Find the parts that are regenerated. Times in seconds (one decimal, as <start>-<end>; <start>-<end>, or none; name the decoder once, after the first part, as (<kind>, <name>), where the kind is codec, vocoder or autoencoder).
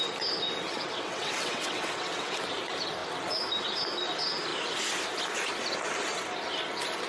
0.7-2.4 (vocoder, WaveNeXt)